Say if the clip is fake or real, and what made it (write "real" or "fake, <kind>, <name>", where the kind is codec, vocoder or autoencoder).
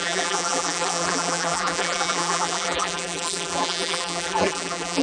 fake, vocoder, BigVGAN v2